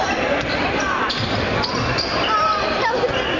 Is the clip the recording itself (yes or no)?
no